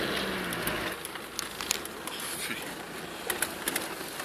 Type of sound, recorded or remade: recorded